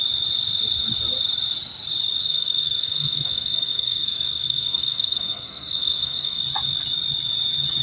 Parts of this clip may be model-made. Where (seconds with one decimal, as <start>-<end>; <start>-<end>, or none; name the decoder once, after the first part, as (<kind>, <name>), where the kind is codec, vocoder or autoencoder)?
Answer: 2.2-6.4 (codec, SNAC)